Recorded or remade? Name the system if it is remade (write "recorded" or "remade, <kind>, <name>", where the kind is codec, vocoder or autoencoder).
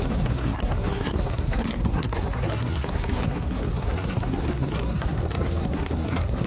remade, codec, SNAC